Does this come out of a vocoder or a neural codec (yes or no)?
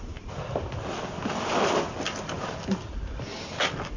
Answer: no